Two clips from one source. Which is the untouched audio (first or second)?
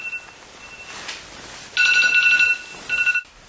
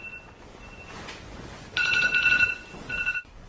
first